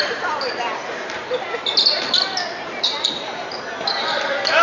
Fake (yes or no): yes